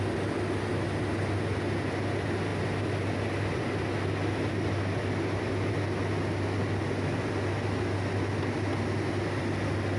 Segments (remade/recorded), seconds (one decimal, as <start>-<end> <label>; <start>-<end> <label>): 0.0-10.0 recorded